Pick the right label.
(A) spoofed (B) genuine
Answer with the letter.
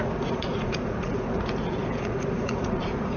A